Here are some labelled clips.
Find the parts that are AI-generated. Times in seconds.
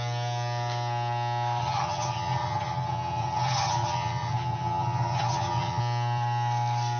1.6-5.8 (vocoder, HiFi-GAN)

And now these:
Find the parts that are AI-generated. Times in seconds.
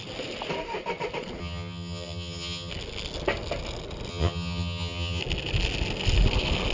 1.4-2.7 (vocoder, HiFi-GAN); 4.1-5.2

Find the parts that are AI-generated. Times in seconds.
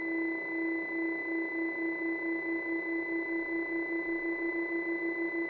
none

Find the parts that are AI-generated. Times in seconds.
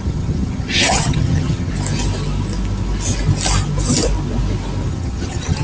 0.0-1.7 (vocoder, HiFi-GAN); 4.9-5.6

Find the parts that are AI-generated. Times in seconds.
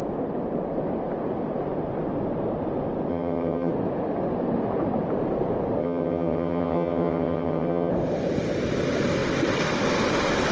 3.1-3.7 (vocoder, HiFi-GAN); 5.8-7.9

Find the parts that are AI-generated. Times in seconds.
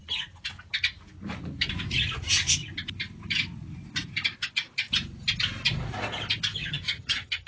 6.6-7.5 (vocoder, HiFi-GAN)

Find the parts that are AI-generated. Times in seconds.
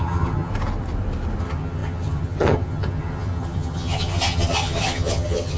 0.0-0.5 (vocoder, HiFi-GAN); 1.4-5.6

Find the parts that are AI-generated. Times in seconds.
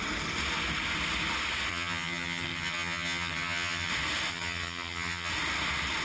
1.7-3.9 (vocoder, HiFi-GAN); 4.3-5.3